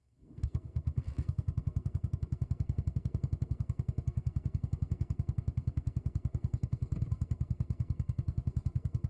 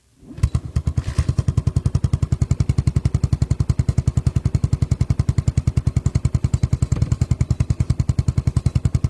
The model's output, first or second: first